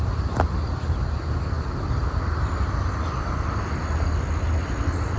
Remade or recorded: recorded